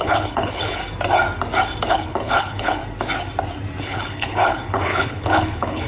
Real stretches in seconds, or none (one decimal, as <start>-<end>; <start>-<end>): 0.8-1.9; 2.8-3.8